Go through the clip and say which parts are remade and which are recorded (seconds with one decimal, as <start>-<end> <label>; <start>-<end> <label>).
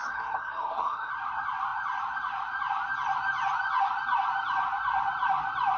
0.0-1.1 remade; 1.1-5.8 recorded